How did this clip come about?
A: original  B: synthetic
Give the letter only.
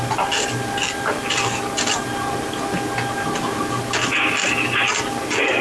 A